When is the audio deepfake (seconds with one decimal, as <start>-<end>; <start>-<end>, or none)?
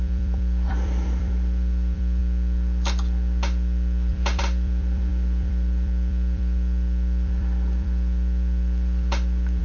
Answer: 0.0-2.2; 4.1-9.6